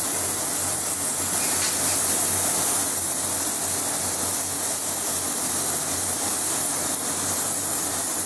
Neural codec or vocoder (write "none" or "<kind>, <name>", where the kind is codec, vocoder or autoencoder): none